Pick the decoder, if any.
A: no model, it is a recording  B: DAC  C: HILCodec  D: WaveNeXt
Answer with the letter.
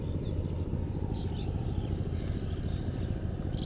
A